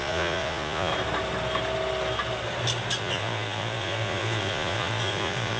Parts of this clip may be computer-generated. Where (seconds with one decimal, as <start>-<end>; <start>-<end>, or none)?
0.0-0.9; 3.0-5.6